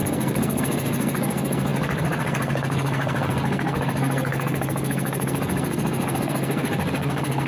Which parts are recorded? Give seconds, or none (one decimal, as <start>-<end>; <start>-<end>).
none